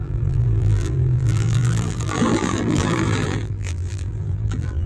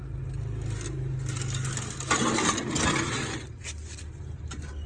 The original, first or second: second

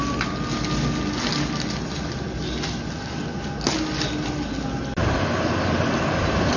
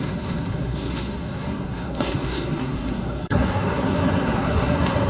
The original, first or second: first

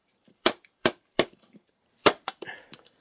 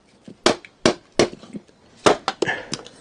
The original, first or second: second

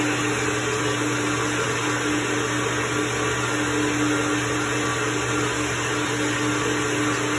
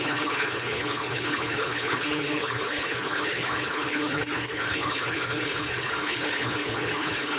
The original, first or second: first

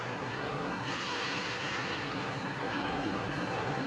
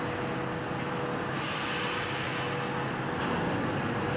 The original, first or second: second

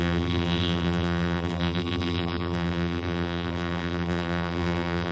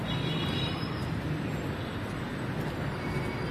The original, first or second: second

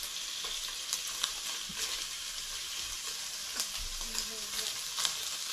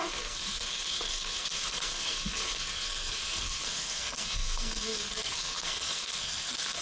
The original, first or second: first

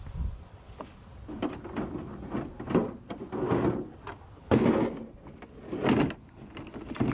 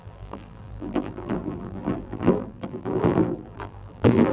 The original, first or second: first